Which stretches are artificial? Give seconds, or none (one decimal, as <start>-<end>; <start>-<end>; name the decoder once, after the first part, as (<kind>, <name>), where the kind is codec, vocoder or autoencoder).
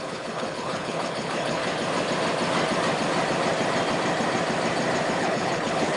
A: 0.0-1.6 (codec, HILCodec); 5.2-6.0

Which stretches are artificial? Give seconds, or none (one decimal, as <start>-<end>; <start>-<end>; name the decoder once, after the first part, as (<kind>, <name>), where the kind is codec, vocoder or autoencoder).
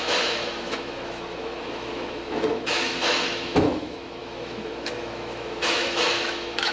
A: 0.0-6.7 (autoencoder, DAC-VAE)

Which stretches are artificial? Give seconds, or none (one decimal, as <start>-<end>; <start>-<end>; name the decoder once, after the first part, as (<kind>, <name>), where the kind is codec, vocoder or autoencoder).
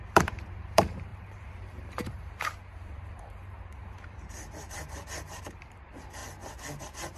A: 0.0-6.2 (vocoder, BigVGAN v2); 6.8-7.2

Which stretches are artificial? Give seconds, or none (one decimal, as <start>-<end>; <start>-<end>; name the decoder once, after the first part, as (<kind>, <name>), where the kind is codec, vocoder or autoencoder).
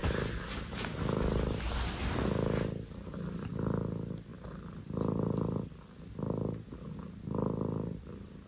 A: none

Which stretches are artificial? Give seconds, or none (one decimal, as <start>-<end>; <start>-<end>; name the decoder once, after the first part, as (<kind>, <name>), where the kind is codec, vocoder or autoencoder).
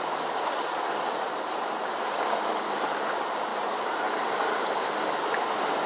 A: 3.5-4.8 (vocoder, BigVGAN v2)